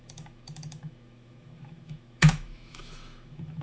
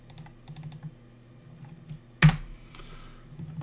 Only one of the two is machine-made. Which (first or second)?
first